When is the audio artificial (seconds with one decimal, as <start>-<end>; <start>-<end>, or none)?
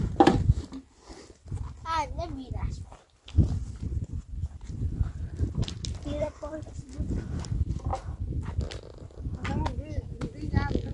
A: 4.4-6.9